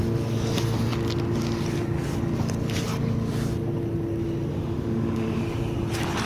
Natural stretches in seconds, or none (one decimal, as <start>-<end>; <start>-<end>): 0.0-4.5; 5.4-6.3